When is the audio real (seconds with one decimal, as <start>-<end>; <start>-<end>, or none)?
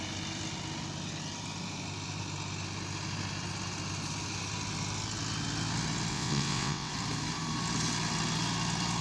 0.0-6.1; 6.9-9.0